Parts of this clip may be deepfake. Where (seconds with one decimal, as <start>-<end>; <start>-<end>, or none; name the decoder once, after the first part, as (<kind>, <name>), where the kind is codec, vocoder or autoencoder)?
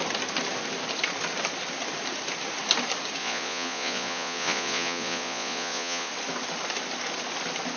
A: 3.2-6.1 (vocoder, Vocos)